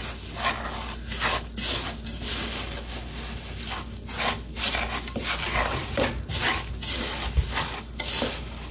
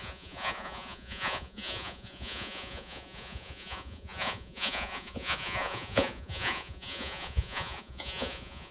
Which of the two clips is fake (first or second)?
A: second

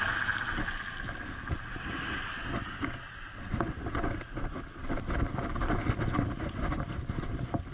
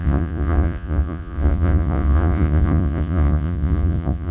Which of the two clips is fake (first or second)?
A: second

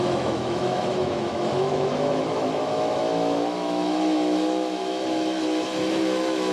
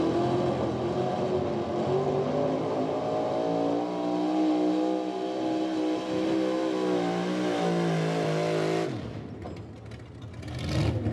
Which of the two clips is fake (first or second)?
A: first